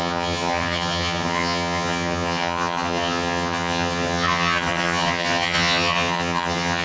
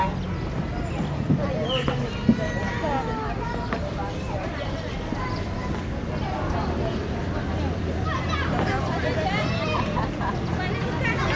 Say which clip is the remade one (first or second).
first